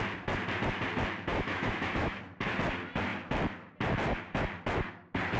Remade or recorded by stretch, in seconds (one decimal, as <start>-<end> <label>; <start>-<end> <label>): 0.0-1.3 recorded; 1.3-2.2 remade; 2.2-5.4 recorded